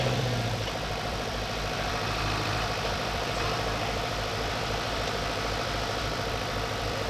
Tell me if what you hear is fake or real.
fake